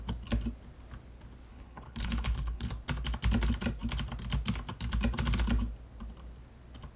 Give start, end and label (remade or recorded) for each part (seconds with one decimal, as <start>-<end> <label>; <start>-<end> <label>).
0.0-1.5 recorded; 1.5-2.7 remade; 2.7-7.0 recorded